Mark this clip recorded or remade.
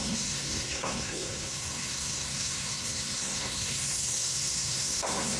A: remade